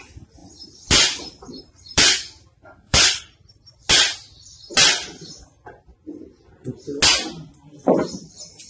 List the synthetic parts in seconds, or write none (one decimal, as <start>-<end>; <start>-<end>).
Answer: 0.4-3.9; 7.8-8.7